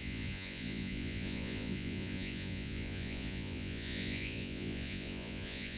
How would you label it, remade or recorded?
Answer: remade